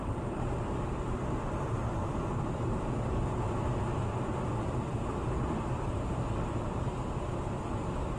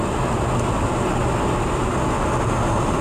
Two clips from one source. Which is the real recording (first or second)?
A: second